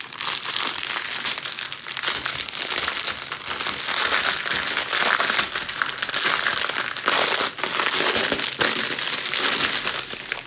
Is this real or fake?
real